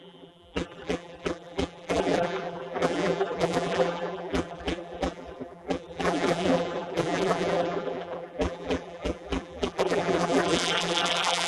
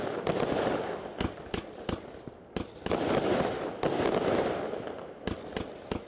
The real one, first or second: second